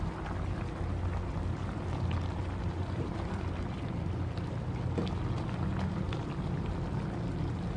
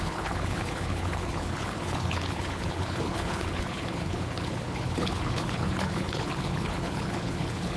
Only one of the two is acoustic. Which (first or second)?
first